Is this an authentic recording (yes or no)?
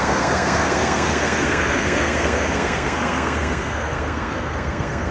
no